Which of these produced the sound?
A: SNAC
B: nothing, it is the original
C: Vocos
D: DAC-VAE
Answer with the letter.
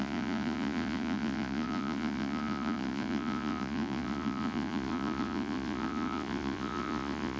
C